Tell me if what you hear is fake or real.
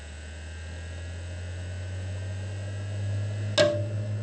real